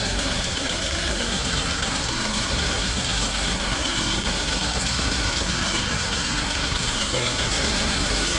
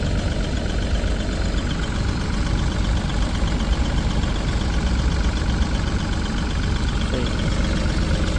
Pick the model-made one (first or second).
first